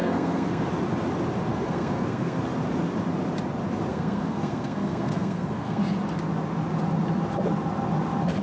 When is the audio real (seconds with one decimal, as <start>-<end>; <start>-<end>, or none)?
0.7-1.5; 2.4-3.9; 5.8-8.4